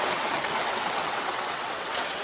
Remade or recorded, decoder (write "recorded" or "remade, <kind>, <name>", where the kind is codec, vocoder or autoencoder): remade, vocoder, WaveNeXt